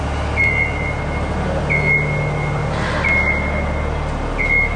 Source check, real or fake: real